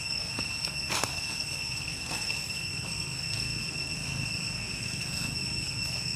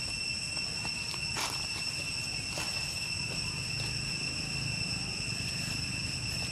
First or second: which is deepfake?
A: first